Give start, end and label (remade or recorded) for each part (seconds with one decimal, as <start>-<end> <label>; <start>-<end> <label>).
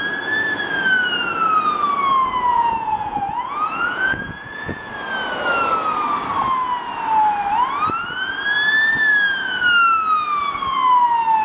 0.0-2.5 recorded; 2.5-4.9 remade; 4.9-11.4 recorded